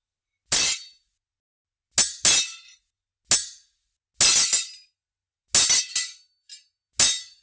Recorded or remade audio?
recorded